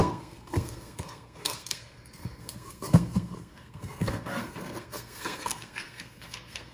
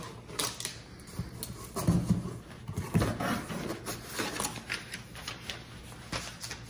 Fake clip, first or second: first